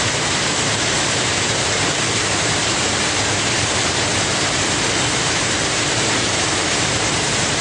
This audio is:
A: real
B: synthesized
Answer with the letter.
B